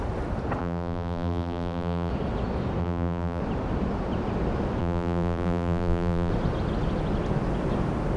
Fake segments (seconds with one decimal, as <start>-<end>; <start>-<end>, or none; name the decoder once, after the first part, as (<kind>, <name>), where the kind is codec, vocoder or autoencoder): 0.6-2.1 (vocoder, BigVGAN v2); 2.8-3.4; 4.8-6.3